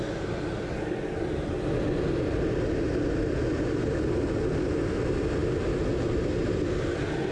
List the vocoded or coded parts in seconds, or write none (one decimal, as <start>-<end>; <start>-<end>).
none